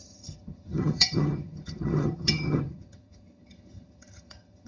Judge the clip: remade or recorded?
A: remade